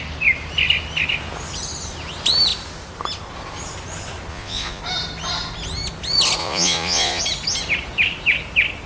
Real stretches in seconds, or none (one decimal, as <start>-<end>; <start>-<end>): 0.0-4.3; 4.8-6.4; 7.2-8.9